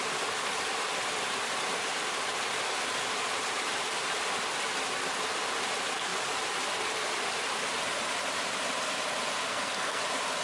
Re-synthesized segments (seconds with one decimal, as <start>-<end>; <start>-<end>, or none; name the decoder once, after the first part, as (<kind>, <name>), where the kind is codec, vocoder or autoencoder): 9.5-10.0 (codec, SNAC)